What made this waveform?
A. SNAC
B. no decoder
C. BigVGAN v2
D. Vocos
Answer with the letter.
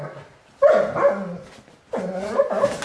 B